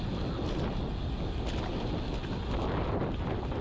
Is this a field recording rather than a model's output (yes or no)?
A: yes